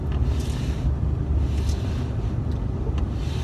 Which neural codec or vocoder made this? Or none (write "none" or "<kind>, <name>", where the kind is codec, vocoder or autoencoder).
none